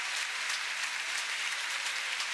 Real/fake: real